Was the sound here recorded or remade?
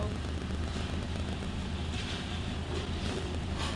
remade